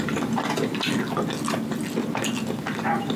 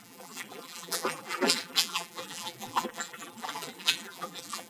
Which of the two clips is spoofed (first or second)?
second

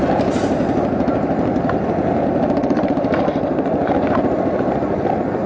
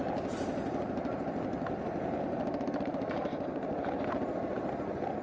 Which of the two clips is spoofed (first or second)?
first